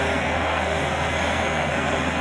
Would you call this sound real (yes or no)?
no